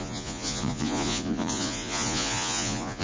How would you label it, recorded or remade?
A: remade